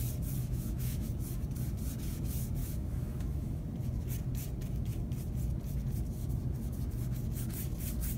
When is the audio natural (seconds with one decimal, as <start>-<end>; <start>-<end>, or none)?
0.0-0.4; 1.1-2.6; 3.6-8.2